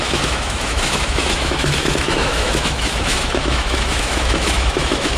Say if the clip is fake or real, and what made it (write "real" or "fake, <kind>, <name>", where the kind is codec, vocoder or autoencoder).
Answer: fake, autoencoder, DAC-VAE